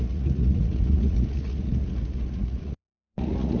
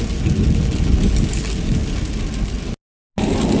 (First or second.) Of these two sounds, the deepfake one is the first